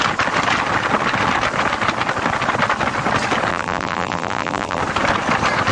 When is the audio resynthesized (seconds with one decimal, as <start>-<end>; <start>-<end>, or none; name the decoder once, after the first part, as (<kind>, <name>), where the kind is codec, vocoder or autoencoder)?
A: 3.5-4.8 (vocoder, BigVGAN v2)